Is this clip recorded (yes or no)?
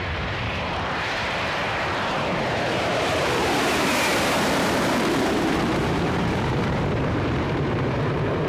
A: no